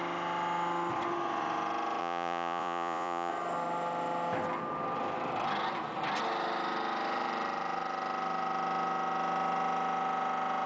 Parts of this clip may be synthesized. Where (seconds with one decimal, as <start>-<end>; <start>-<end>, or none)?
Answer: 2.0-3.3